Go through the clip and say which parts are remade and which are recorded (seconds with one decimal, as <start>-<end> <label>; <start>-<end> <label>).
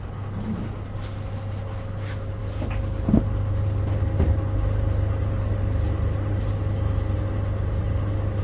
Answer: 0.0-8.4 recorded